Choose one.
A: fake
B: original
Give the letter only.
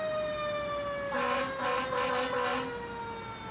B